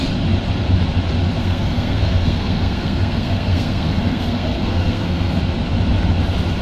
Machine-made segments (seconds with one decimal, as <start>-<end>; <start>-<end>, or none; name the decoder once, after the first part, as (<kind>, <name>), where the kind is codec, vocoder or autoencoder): 1.4-5.4 (codec, SNAC)